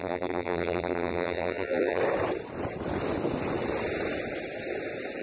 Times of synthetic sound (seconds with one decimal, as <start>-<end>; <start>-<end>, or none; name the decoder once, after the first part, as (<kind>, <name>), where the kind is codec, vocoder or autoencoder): 0.0-2.0 (vocoder, BigVGAN v2)